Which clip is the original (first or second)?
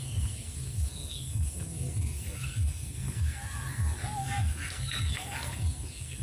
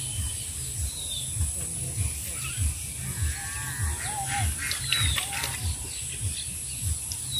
second